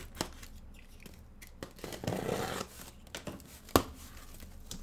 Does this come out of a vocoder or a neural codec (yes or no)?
no